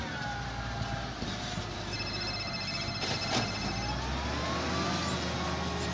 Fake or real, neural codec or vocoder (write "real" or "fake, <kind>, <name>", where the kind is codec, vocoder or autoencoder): real